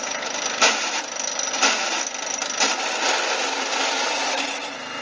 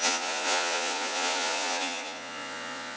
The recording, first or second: first